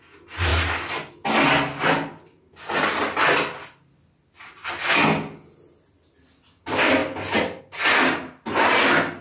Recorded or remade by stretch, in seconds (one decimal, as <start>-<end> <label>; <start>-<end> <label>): 0.0-9.2 recorded